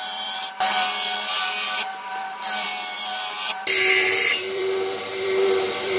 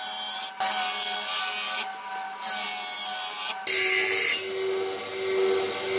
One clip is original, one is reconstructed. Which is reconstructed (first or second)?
first